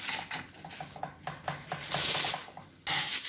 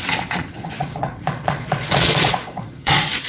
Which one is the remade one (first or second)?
second